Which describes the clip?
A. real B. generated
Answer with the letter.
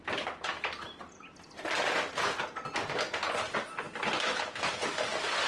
A